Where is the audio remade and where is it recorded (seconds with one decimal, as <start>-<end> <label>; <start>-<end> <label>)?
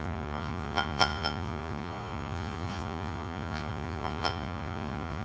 0.0-5.2 remade